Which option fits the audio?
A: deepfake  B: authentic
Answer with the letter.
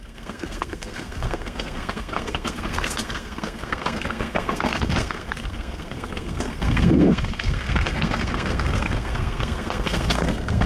A